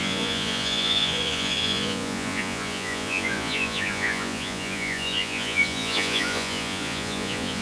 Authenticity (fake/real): fake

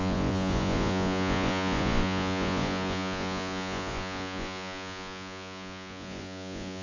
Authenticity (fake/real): fake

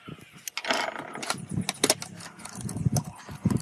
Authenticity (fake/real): real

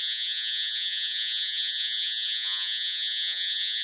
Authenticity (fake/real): fake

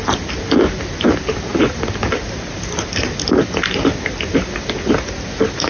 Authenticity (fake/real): real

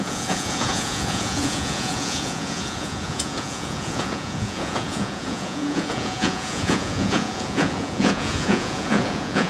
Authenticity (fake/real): fake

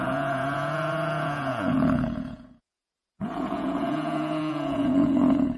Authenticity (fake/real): fake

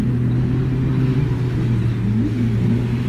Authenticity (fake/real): real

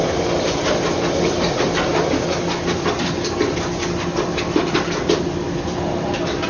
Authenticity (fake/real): real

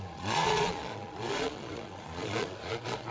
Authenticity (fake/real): fake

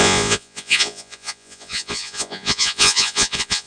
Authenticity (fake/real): fake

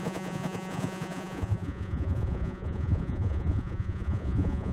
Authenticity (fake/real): fake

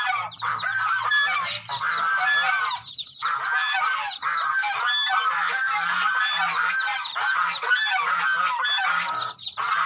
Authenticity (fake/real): real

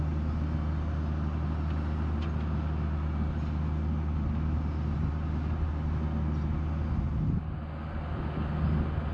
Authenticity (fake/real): real